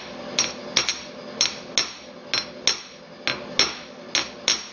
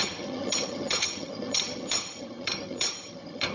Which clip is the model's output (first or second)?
second